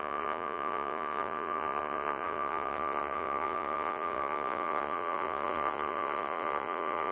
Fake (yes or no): yes